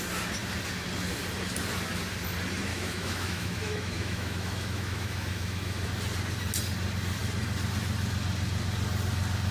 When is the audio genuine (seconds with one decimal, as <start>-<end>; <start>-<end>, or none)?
0.0-2.7; 5.9-9.5